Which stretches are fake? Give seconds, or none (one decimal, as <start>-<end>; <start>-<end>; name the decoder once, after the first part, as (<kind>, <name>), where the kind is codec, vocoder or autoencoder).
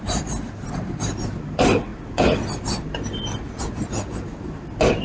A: 0.0-1.9 (vocoder, BigVGAN v2); 3.6-5.0